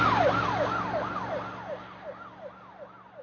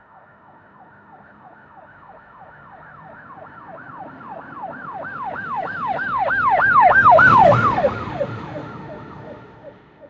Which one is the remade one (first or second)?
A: second